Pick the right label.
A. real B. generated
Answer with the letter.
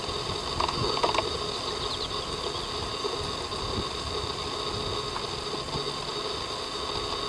A